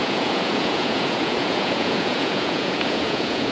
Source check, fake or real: fake